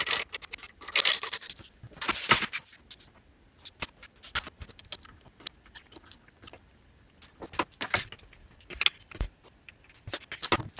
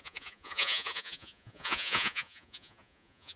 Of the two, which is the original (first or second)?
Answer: first